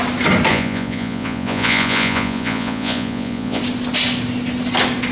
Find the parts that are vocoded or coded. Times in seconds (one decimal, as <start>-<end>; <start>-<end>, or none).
0.5-3.6